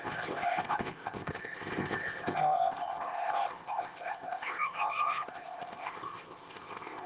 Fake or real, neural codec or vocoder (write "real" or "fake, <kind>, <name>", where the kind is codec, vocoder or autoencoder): fake, codec, ZipCodec